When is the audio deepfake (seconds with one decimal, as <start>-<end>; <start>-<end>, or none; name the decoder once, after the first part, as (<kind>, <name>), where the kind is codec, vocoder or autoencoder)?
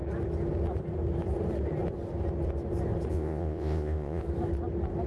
3.1-4.2 (vocoder, Vocos)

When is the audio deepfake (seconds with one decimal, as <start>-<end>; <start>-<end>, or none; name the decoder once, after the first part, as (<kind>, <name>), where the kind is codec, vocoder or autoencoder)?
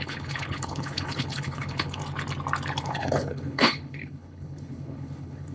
0.0-2.0 (codec, HILCodec); 2.8-5.5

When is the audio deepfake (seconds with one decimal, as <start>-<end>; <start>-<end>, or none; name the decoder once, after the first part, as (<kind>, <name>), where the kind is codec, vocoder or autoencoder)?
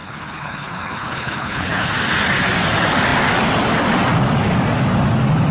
0.0-1.9 (codec, HILCodec)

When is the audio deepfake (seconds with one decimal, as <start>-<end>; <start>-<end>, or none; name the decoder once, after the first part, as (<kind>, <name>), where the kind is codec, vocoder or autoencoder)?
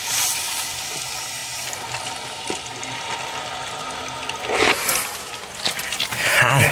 none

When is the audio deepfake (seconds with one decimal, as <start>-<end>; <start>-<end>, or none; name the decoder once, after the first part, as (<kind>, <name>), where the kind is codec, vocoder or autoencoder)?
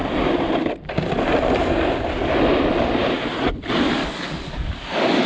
4.0-5.3 (codec, DAC)